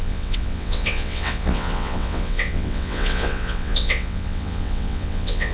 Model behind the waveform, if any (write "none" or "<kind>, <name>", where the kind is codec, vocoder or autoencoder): vocoder, WaveNeXt